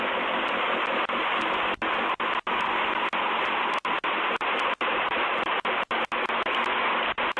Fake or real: real